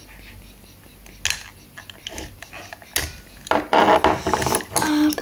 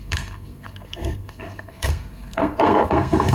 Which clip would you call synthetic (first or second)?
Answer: second